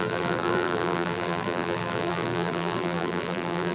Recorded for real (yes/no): no